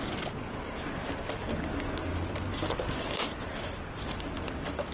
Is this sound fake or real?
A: real